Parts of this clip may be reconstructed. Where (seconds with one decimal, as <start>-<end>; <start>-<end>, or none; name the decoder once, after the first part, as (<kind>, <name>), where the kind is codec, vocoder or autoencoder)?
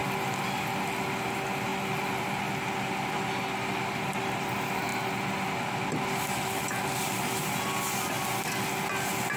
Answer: none